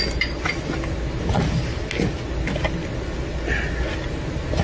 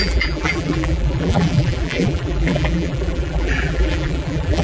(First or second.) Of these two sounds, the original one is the first